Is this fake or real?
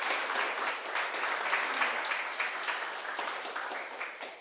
real